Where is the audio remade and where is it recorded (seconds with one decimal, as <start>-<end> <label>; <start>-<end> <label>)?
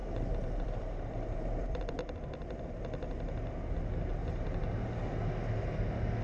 0.0-1.8 remade; 1.8-4.1 recorded; 4.1-5.0 remade; 5.0-6.2 recorded